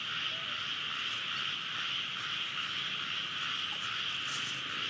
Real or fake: real